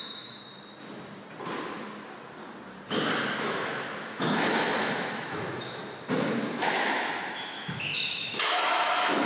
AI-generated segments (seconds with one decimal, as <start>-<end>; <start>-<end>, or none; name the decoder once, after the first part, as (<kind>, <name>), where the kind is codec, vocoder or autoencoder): 0.0-0.4 (autoencoder, DAC-VAE); 3.4-5.8; 6.6-9.3